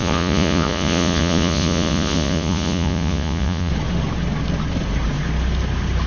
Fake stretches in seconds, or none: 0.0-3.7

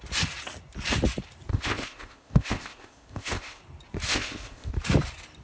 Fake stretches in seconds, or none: 1.5-3.6; 4.1-4.7